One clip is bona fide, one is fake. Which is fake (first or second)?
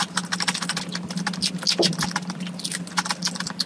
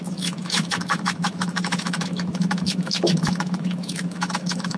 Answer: second